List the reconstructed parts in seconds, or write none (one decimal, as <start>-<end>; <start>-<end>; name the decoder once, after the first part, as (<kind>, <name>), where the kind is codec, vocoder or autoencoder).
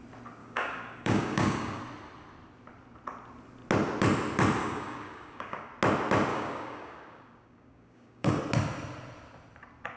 0.4-1.8 (codec, DAC); 4.6-5.7; 6.3-8.4